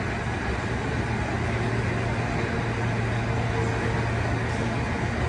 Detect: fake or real real